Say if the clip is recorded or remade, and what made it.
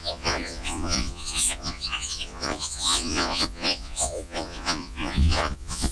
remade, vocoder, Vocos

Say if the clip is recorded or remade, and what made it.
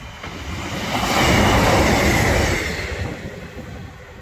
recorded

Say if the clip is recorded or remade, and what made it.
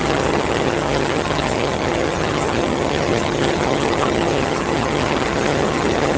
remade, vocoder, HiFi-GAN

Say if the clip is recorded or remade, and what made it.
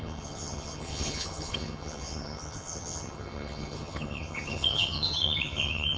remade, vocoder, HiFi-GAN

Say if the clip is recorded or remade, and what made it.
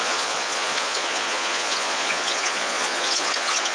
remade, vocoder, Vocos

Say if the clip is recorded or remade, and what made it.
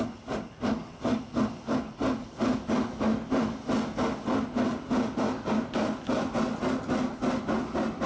recorded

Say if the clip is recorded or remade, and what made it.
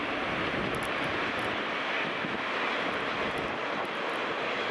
recorded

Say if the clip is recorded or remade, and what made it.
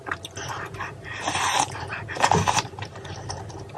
recorded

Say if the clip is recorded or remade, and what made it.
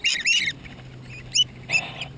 recorded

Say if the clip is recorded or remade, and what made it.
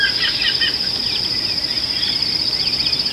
recorded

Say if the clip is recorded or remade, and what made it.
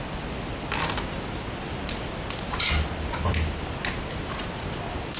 recorded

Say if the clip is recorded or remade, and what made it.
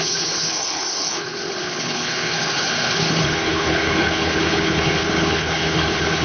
remade, codec, HILCodec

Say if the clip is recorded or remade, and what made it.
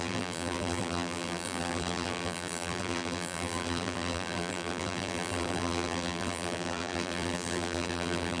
remade, vocoder, BigVGAN v2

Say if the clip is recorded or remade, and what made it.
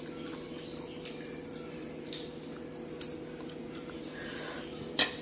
recorded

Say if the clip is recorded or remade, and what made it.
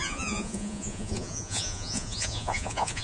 remade, vocoder, Vocos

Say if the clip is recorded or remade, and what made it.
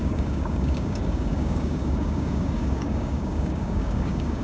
remade, codec, DAC